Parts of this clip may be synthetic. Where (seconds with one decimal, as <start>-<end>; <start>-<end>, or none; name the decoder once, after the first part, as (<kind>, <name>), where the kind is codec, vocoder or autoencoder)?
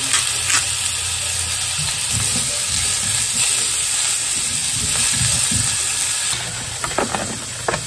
none